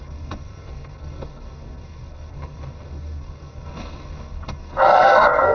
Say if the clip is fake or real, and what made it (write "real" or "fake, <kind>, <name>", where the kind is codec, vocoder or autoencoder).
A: fake, codec, SNAC